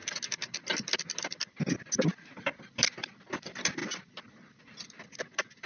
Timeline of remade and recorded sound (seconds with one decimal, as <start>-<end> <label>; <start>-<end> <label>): 0.0-5.7 recorded